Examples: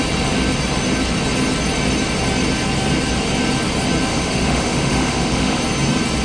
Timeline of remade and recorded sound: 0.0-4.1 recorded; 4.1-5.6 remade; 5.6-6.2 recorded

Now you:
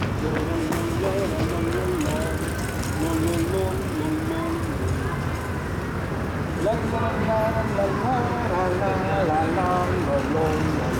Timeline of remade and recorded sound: 0.0-0.6 recorded; 0.6-1.4 remade; 1.4-11.0 recorded

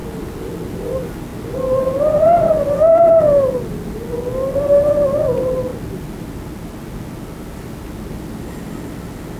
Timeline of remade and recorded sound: 0.0-9.4 recorded

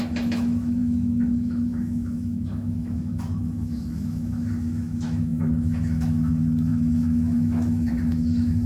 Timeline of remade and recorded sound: 0.0-8.7 remade

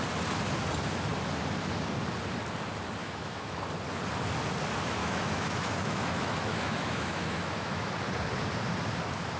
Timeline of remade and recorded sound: 0.0-3.0 recorded; 3.0-3.6 remade; 3.6-5.0 recorded; 5.0-7.9 remade; 7.9-9.4 recorded

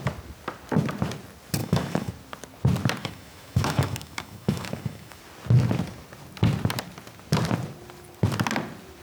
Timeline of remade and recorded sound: 0.0-1.6 recorded; 1.6-2.1 remade; 2.1-3.0 recorded; 3.0-5.2 remade; 5.2-9.0 recorded